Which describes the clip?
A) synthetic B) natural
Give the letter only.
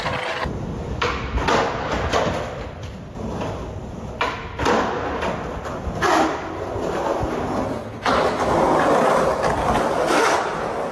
B